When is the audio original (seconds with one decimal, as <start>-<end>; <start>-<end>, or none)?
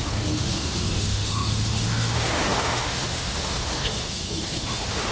none